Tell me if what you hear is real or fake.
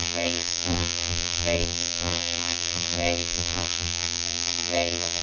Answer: fake